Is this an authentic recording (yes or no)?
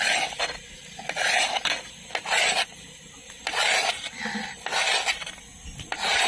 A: yes